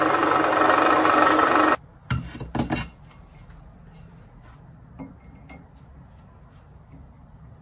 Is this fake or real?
real